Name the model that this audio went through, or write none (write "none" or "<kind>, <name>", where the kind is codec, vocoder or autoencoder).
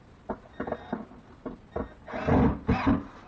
none